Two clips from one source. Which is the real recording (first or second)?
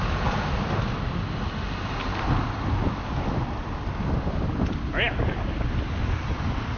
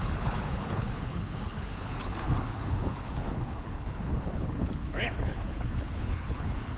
first